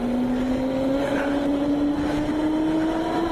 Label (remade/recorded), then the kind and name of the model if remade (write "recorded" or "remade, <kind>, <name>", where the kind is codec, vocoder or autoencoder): recorded